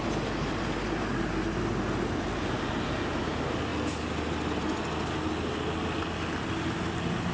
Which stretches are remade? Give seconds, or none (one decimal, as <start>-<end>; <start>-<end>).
none